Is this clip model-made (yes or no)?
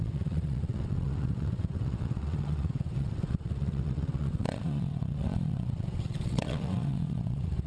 yes